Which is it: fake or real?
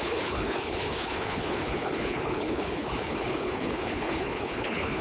fake